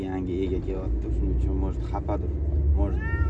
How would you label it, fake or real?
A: real